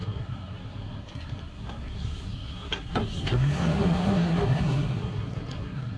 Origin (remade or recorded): remade